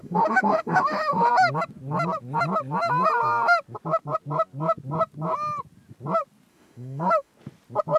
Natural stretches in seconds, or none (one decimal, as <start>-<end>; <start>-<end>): 1.3-6.5; 7.3-8.0